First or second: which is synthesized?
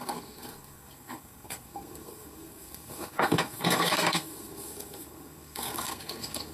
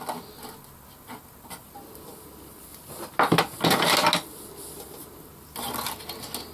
first